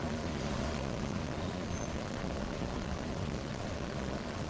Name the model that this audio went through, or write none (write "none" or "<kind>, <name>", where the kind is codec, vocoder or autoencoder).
vocoder, Vocos